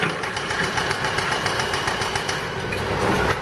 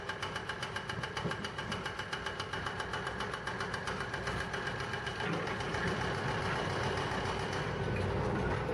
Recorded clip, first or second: second